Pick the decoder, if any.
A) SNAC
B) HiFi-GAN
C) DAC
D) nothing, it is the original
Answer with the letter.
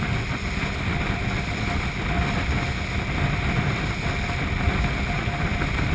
D